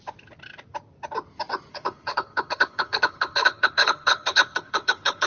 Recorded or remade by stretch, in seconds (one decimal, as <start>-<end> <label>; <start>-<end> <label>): 0.0-1.7 recorded; 1.7-5.3 remade